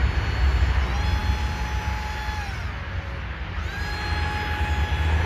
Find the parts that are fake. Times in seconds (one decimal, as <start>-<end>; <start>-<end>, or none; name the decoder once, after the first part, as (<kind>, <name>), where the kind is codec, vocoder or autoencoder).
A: none